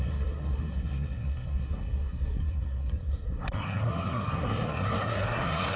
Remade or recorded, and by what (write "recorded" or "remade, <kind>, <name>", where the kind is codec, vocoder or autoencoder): remade, codec, SNAC